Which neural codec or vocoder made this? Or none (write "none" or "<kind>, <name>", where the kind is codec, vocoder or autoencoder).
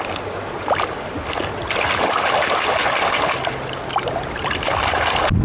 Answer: none